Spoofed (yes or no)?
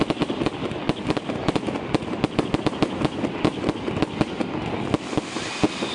no